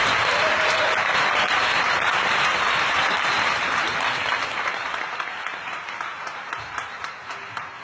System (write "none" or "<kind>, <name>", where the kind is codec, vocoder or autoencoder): vocoder, BigVGAN v2